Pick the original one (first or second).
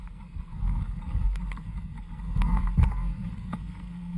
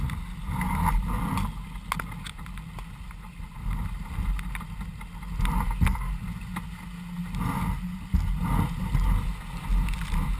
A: second